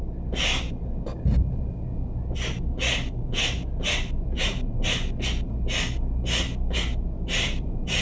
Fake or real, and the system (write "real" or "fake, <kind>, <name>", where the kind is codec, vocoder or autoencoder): real